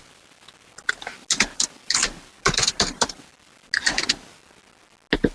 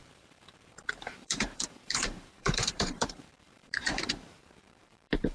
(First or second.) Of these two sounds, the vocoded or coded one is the second